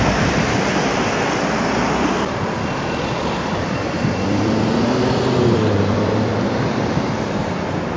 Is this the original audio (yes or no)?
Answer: no